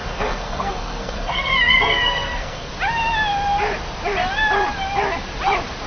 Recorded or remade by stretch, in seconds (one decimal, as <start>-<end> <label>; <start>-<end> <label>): 0.0-2.7 remade; 2.7-5.9 recorded